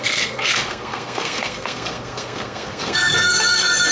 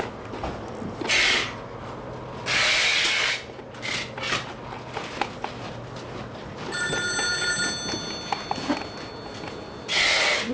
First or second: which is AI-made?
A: first